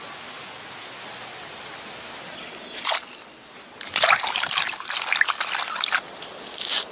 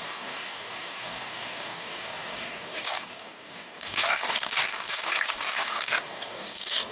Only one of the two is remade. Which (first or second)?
second